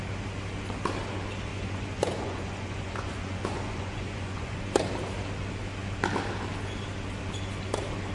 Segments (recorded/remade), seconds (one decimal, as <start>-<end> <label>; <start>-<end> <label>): 0.0-1.5 recorded; 1.5-4.6 remade; 4.6-8.1 recorded